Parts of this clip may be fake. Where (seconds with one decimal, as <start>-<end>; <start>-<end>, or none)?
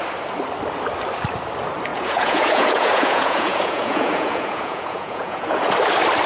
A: 1.9-5.7